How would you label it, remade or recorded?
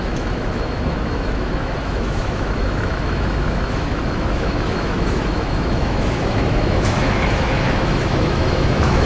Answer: remade